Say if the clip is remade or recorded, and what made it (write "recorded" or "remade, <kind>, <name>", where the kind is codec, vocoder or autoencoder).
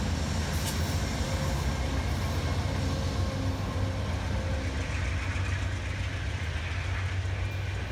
recorded